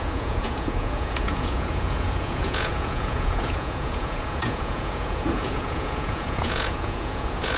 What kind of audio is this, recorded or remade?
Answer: remade